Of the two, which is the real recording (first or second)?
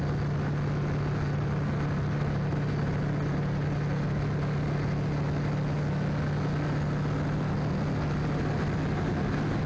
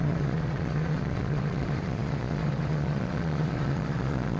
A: first